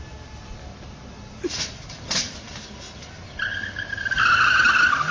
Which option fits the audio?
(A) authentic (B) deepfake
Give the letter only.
A